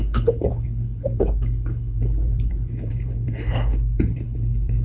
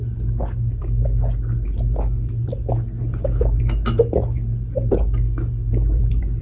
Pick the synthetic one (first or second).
first